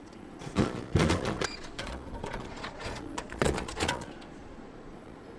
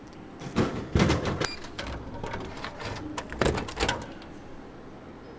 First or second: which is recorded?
second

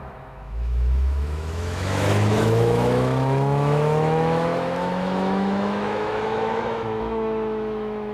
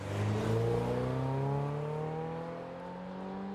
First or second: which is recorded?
second